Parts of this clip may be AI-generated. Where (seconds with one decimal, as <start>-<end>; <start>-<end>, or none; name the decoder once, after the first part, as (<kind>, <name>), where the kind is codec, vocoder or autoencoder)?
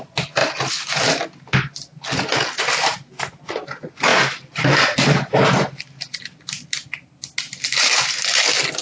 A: none